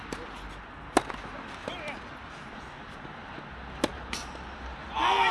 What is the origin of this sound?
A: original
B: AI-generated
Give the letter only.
A